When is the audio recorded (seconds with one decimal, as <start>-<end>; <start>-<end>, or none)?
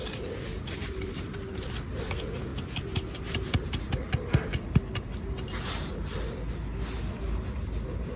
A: 0.0-0.8; 2.1-8.2